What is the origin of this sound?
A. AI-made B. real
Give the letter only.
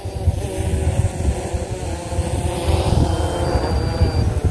B